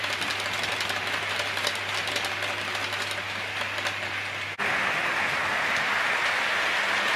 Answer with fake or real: real